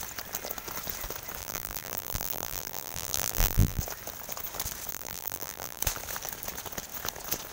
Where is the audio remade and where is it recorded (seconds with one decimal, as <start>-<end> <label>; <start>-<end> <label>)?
0.0-1.4 recorded; 1.4-3.8 remade; 3.8-4.9 recorded; 4.9-5.8 remade; 5.8-7.5 recorded